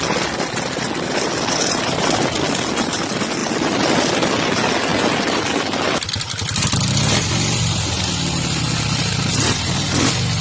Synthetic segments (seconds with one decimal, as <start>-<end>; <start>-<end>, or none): none